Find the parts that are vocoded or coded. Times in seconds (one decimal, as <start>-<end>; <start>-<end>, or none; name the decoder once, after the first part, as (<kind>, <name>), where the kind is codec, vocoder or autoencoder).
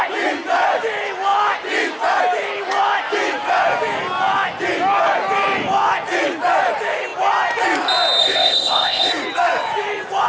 8.2-9.1 (codec, ZipCodec)